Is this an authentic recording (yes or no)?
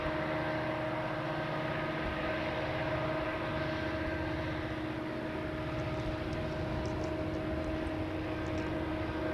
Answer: yes